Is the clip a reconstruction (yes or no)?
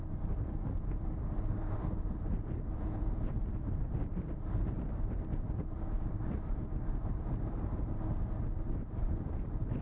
yes